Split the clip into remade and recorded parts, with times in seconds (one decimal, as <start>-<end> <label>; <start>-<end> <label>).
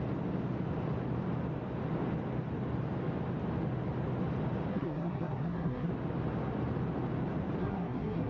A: 0.0-4.7 recorded; 4.7-5.9 remade; 5.9-7.6 recorded; 7.6-8.3 remade